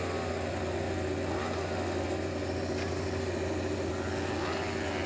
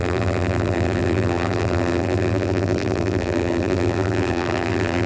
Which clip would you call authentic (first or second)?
first